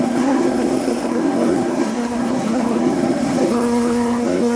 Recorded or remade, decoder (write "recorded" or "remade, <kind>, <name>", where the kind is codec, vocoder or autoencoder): remade, codec, SNAC